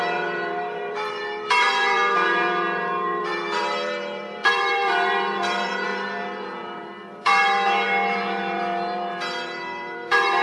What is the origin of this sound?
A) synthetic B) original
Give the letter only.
A